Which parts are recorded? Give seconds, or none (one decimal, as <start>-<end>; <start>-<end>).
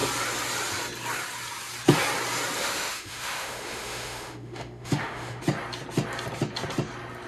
0.0-2.6; 5.4-7.3